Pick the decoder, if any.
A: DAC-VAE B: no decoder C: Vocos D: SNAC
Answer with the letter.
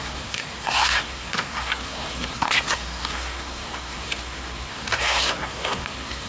D